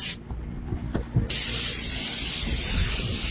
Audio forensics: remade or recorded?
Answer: recorded